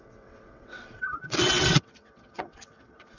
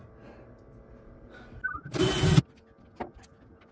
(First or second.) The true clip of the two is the second